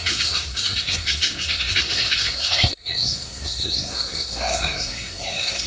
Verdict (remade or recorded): remade